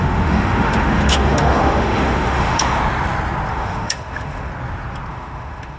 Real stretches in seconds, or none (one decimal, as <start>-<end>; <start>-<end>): 2.8-3.5; 4.5-5.1

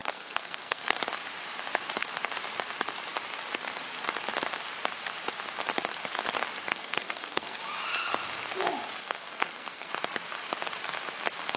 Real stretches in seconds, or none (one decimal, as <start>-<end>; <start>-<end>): 1.0-6.7; 7.6-9.0; 9.9-11.6

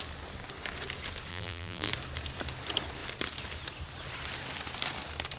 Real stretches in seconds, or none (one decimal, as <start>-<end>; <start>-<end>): 0.0-1.3; 1.9-5.4

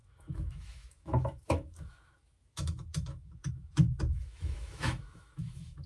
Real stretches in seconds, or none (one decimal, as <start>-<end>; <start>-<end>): none

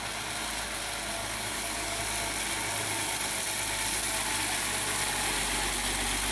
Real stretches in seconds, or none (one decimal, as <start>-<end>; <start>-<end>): 0.0-1.2; 2.0-6.3

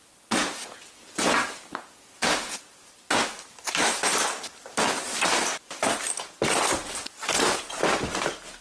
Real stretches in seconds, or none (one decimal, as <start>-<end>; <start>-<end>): 0.0-0.4; 2.9-8.6

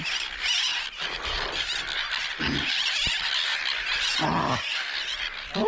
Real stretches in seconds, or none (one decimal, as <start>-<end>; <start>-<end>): 0.0-0.7; 2.1-5.1